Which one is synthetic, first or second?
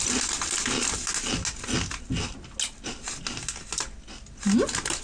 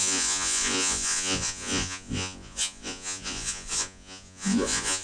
second